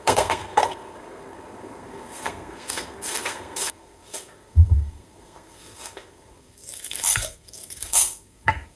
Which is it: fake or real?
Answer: fake